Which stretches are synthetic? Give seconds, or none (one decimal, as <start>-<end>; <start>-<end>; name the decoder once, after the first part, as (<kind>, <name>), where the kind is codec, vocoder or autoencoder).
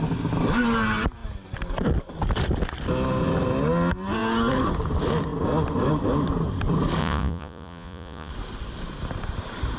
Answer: 7.0-8.3 (vocoder, Vocos)